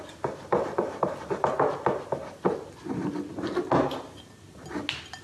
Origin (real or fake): real